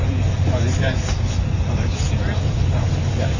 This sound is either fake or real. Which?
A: fake